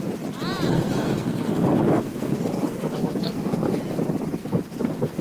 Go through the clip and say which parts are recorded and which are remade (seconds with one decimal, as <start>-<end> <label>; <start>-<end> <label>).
0.0-0.7 recorded; 0.7-3.8 remade; 3.8-4.4 recorded; 4.4-5.2 remade

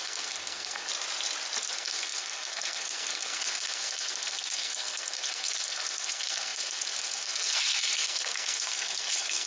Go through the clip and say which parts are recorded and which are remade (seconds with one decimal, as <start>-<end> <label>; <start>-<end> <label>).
0.0-0.9 remade; 0.9-1.7 recorded; 1.7-9.5 remade

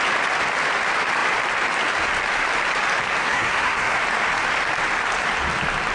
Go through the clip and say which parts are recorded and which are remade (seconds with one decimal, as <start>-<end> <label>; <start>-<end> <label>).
0.0-3.2 recorded; 3.2-4.0 remade; 4.0-5.9 recorded